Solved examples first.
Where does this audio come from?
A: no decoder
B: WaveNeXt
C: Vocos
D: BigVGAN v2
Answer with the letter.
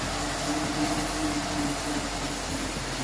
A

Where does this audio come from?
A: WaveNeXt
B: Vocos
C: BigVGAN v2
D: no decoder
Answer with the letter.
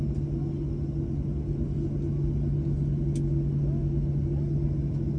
D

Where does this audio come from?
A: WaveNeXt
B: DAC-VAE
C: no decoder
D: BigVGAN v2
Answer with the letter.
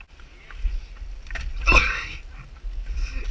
C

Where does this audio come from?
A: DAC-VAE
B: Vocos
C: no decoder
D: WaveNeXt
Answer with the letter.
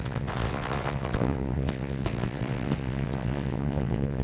D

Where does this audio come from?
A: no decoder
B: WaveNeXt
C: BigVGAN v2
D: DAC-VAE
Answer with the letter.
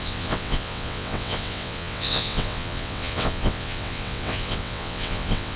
B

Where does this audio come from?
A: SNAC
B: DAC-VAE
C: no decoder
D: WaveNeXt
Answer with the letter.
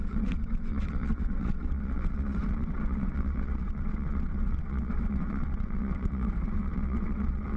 D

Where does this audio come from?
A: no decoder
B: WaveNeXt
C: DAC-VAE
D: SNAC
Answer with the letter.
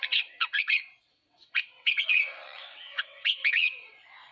B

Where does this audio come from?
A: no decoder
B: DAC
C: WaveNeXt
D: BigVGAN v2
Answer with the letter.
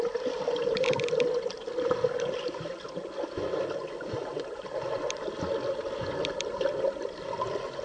A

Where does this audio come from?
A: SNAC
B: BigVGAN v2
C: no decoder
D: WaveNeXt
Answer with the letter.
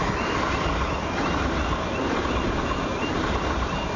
C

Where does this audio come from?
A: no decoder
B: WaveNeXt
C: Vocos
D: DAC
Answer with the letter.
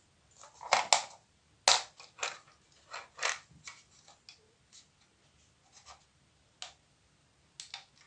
A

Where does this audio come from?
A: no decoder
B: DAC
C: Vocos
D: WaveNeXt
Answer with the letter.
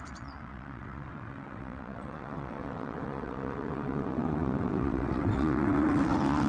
D